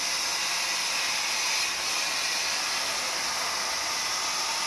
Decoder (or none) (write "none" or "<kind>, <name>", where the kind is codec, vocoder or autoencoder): none